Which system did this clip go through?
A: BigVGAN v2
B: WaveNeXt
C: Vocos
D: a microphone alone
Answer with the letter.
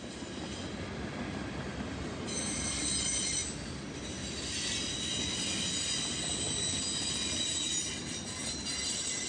D